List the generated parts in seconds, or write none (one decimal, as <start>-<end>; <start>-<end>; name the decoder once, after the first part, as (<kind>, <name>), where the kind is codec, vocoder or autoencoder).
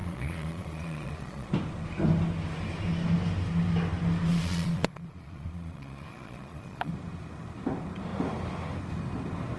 0.0-1.5 (vocoder, Vocos); 4.3-6.9